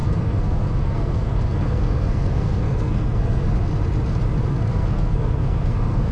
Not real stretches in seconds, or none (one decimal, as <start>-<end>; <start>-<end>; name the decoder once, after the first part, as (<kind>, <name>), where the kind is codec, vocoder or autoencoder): 0.0-3.5 (codec, SNAC); 4.5-6.1